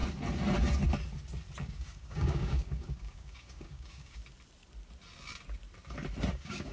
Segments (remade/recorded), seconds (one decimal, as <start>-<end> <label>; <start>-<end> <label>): 0.0-1.6 recorded; 1.6-4.2 remade; 4.2-6.3 recorded; 6.3-6.7 remade